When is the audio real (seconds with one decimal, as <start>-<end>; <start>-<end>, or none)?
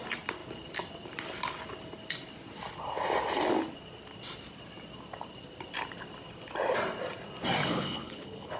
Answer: 0.0-7.6